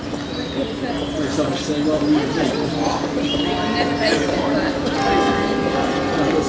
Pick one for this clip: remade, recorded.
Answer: recorded